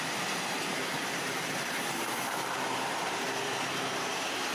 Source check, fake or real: fake